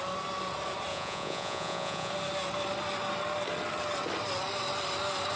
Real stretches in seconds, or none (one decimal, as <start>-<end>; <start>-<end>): 0.0-0.9; 2.1-5.4